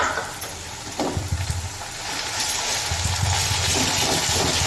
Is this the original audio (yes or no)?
yes